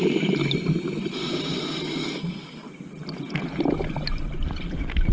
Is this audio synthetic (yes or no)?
no